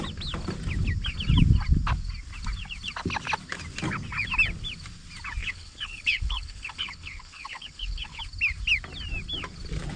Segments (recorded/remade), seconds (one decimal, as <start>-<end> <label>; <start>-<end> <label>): 0.0-5.4 recorded; 5.4-8.2 remade; 8.2-10.0 recorded